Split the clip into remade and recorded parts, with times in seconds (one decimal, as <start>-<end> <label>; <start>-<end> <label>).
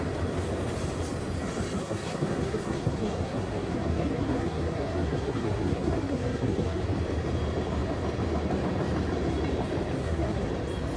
0.0-1.8 recorded; 1.8-6.8 remade; 6.8-10.0 recorded; 10.0-10.5 remade; 10.5-11.0 recorded